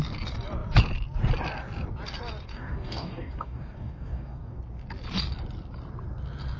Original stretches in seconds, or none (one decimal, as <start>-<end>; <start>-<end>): 0.0-2.5; 4.6-6.6